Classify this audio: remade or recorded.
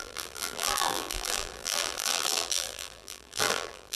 remade